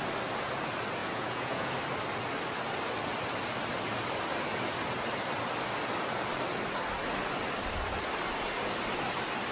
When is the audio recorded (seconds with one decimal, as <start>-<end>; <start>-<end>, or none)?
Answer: 0.0-1.0; 1.7-9.5